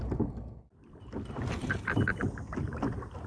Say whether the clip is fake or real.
real